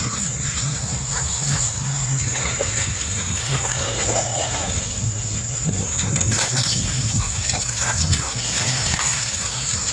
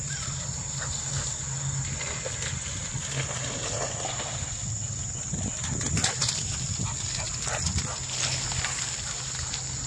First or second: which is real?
second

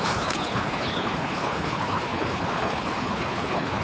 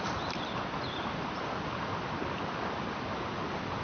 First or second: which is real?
second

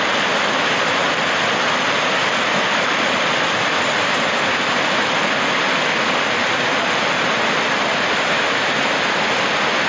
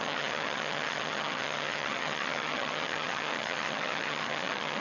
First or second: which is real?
first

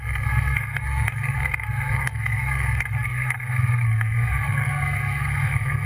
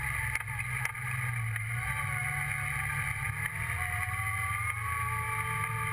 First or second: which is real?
second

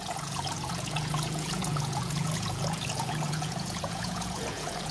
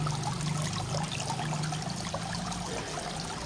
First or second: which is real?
second